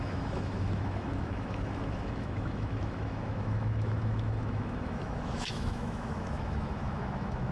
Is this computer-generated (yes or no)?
yes